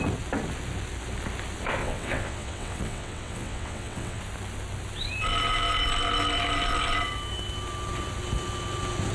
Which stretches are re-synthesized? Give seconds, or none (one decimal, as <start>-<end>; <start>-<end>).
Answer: 1.8-4.2